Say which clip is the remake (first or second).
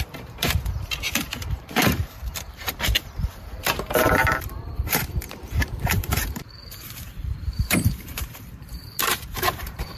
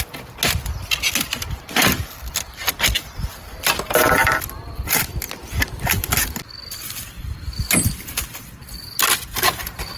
first